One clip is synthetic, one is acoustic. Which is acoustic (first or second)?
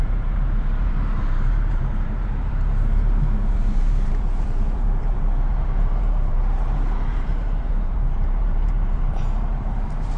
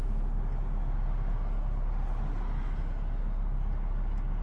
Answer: second